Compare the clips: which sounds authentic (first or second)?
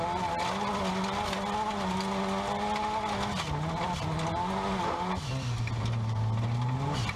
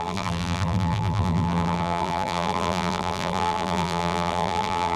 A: first